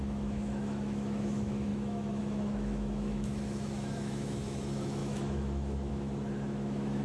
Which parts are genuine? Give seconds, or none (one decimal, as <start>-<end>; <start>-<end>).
none